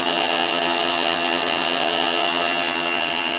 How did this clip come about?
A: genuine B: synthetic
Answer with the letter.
B